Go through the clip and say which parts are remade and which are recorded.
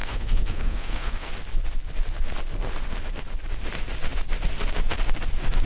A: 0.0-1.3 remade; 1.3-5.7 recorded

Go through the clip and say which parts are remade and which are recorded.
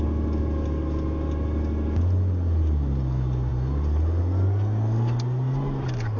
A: 0.0-6.2 recorded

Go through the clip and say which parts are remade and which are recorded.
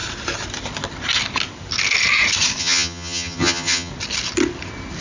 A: 0.0-2.6 recorded; 2.6-3.9 remade; 3.9-5.0 recorded